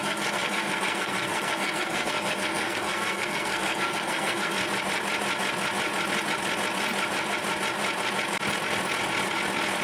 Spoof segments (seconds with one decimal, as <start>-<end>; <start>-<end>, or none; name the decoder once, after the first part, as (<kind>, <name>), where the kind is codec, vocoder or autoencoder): 0.0-4.6 (codec, SNAC)